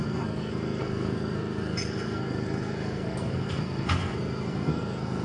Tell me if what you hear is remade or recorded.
remade